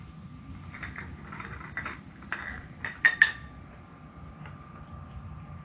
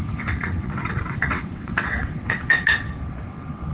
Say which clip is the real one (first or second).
first